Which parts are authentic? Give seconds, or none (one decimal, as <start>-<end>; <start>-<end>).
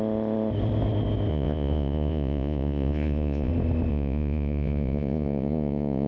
0.0-1.3; 3.5-3.9